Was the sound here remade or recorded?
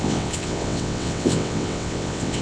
remade